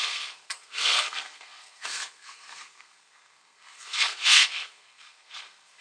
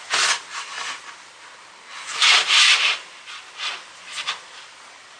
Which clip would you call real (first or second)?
second